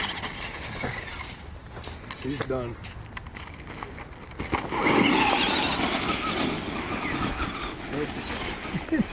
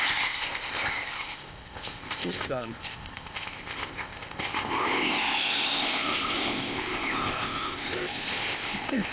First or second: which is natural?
first